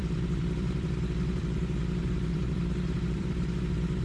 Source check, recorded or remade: remade